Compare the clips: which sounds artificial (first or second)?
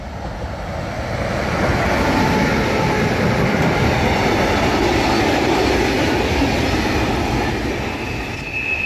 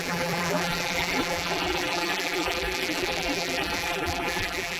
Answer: second